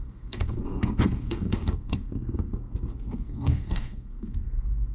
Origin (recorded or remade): remade